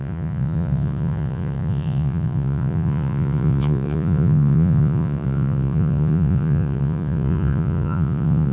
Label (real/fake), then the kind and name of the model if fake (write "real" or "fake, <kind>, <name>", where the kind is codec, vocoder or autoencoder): fake, vocoder, Vocos